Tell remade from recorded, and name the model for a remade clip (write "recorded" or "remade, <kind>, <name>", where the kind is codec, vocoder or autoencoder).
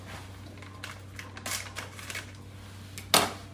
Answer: recorded